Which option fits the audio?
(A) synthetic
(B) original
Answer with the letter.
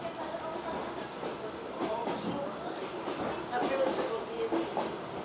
B